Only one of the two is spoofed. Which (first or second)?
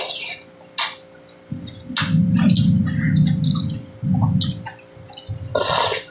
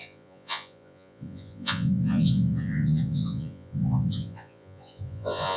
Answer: second